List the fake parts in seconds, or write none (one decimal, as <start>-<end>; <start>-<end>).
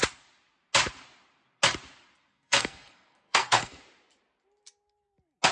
2.3-3.8